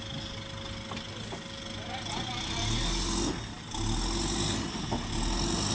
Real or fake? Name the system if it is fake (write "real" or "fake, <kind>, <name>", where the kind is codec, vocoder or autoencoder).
real